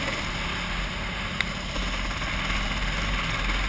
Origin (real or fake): real